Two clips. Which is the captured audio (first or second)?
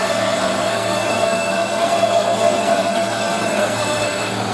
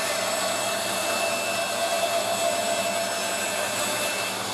second